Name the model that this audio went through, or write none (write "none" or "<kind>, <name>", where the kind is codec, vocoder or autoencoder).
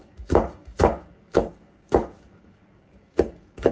codec, DAC